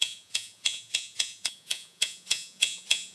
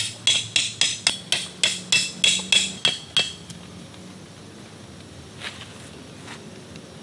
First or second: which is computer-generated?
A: first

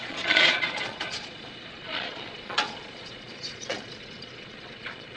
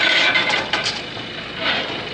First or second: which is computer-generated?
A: first